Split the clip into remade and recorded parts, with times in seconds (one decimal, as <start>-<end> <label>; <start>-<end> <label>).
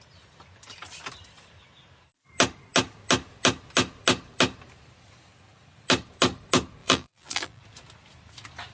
0.0-6.8 recorded; 6.8-7.6 remade; 7.6-8.7 recorded